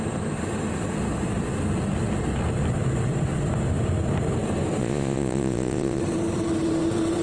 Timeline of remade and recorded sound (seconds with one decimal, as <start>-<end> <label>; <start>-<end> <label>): 0.0-4.8 recorded; 4.8-6.0 remade; 6.0-7.2 recorded